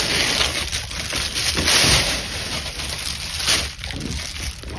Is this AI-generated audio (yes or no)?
no